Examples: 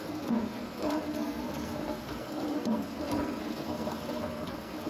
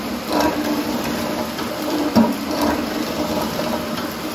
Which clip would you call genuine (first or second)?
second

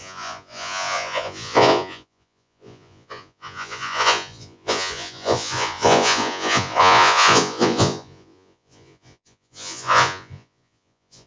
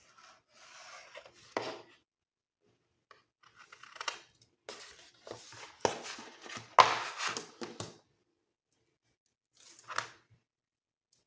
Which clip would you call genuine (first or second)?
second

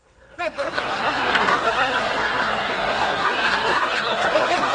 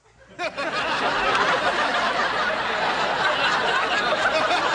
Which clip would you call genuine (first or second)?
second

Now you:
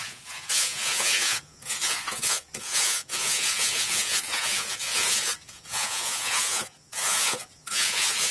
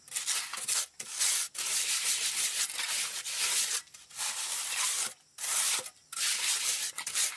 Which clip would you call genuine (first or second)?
second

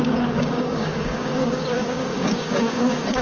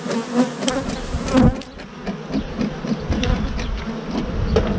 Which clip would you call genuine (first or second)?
second